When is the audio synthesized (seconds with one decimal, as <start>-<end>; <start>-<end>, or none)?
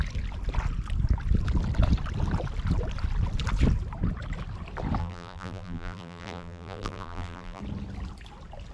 5.0-7.6